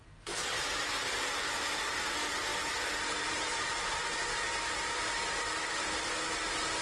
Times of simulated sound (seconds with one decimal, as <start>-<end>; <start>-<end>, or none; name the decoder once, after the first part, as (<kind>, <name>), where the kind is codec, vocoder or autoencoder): none